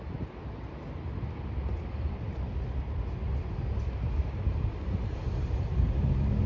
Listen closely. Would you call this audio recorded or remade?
recorded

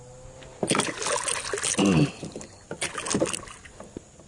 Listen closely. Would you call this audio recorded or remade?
recorded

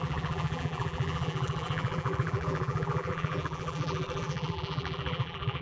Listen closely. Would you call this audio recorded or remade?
remade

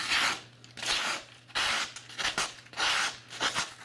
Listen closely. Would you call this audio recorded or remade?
recorded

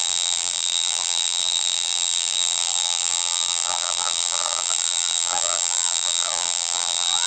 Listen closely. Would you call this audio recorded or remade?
remade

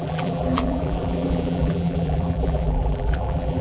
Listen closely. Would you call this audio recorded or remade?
remade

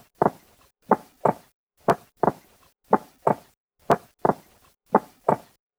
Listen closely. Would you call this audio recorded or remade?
remade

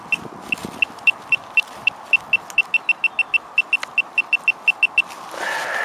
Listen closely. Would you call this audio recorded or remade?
recorded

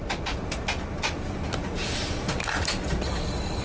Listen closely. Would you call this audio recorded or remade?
recorded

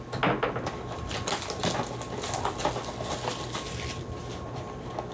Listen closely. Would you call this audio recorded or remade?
recorded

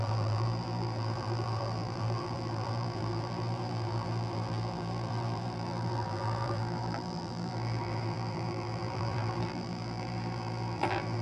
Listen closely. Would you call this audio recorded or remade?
remade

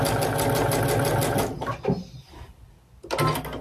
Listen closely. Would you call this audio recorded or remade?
recorded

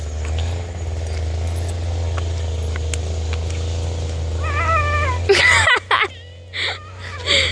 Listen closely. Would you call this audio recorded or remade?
recorded